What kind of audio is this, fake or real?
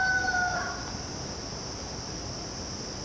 real